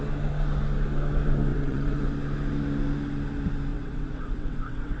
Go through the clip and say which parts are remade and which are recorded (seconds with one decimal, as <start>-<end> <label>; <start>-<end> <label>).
0.0-1.5 recorded; 1.5-2.0 remade; 2.0-3.7 recorded; 3.7-5.0 remade